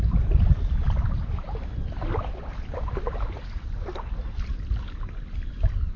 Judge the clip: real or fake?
real